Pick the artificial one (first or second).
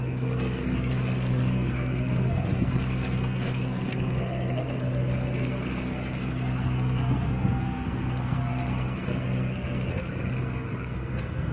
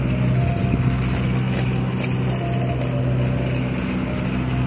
first